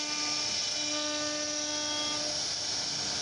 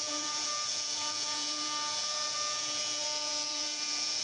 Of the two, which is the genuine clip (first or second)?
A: first